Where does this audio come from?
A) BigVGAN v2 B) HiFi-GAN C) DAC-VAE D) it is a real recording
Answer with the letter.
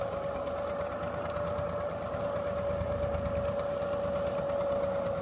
D